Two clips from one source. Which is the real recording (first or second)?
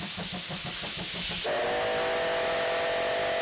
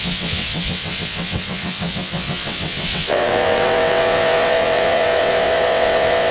first